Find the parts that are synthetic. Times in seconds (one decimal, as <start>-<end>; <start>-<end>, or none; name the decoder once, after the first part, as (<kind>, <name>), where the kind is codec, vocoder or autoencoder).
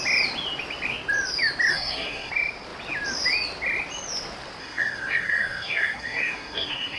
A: 1.7-2.3 (codec, SNAC); 4.6-7.0